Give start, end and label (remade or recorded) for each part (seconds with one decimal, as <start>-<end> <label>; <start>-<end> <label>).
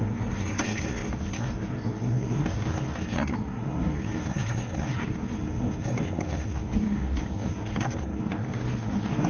0.0-9.3 remade